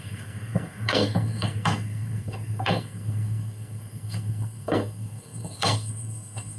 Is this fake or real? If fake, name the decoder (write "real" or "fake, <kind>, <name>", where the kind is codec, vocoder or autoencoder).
fake, codec, SNAC